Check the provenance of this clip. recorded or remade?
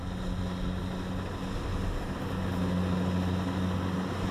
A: recorded